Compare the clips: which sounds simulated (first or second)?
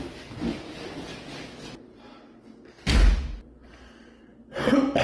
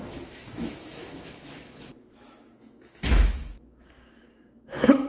second